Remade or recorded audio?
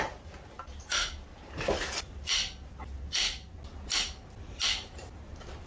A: recorded